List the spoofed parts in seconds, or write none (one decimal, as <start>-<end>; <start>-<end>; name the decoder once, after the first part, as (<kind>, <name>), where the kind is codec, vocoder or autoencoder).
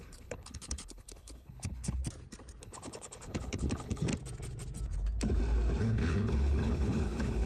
0.0-2.0 (codec, HILCodec); 2.6-4.1; 5.8-7.5